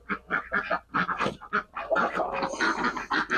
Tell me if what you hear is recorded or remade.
recorded